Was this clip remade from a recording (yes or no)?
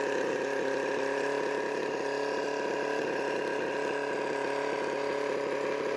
no